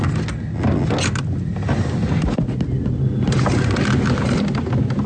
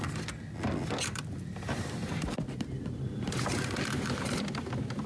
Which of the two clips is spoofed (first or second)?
second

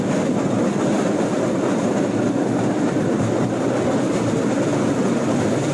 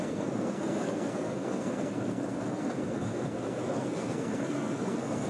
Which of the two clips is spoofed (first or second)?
second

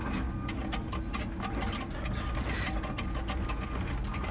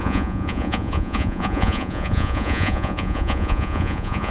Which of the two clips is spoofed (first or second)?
second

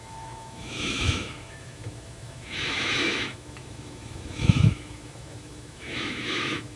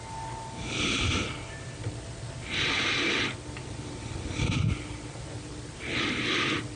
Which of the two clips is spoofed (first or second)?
first